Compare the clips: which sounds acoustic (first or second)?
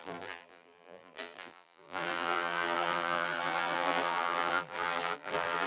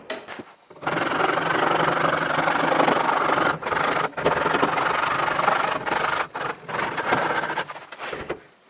second